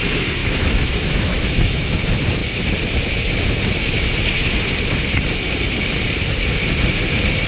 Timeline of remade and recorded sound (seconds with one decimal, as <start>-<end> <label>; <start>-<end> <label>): 0.0-0.4 recorded; 0.4-2.0 remade; 2.0-7.5 recorded